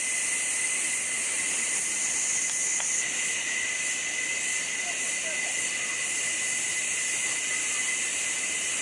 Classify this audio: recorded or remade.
recorded